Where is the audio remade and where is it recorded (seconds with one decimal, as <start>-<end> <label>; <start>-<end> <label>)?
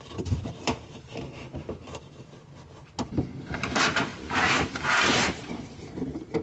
0.0-6.4 remade